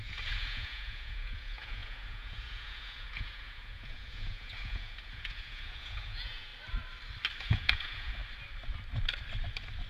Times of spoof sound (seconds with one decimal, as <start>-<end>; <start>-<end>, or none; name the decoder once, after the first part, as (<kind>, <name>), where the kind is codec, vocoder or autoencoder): 0.0-6.5 (vocoder, Vocos); 7.4-8.2